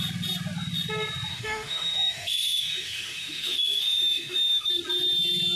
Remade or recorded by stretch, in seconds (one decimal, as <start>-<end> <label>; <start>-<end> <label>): 0.0-1.3 recorded; 1.3-4.7 remade; 4.7-5.6 recorded